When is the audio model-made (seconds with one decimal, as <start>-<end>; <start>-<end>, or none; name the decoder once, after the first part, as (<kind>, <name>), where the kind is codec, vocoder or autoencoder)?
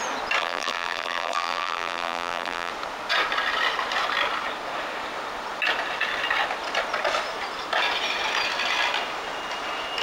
0.4-2.7 (vocoder, BigVGAN v2)